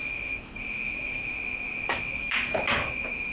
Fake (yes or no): yes